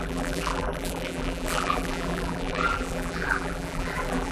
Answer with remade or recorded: remade